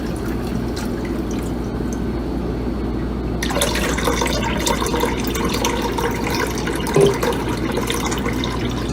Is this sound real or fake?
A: real